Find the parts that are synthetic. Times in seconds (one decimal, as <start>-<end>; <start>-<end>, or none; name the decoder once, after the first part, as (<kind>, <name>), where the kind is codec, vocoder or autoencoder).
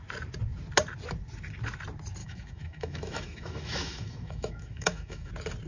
2.2-5.3 (autoencoder, DAC-VAE)